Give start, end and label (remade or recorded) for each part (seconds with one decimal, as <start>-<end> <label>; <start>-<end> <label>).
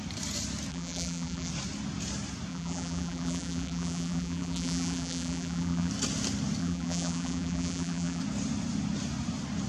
0.0-0.7 recorded; 0.7-1.5 remade; 1.5-2.5 recorded; 2.5-5.9 remade; 5.9-6.6 recorded; 6.6-8.2 remade; 8.2-9.7 recorded